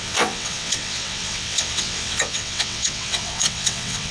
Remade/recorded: remade